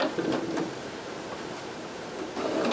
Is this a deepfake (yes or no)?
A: no